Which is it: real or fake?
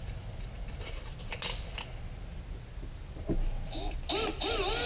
real